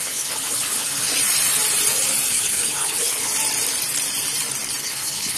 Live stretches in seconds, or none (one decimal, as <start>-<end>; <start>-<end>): 1.1-2.3; 3.3-4.8